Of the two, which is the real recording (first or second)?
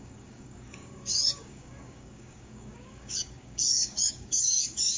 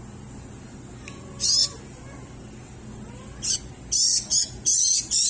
second